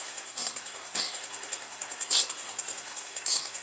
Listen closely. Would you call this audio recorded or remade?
remade